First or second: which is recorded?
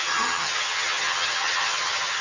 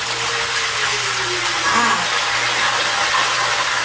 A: second